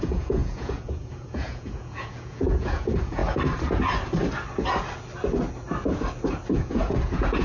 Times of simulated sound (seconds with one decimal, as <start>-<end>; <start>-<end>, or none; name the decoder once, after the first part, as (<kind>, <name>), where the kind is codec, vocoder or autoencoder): 0.0-3.2 (vocoder, Vocos); 6.5-7.4